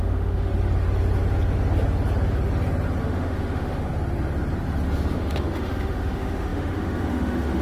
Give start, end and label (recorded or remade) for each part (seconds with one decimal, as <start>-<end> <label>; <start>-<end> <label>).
0.0-0.5 remade; 0.5-3.0 recorded; 3.0-3.9 remade; 3.9-5.1 recorded; 5.1-7.6 remade